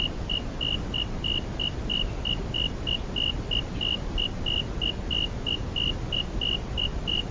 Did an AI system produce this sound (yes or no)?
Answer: no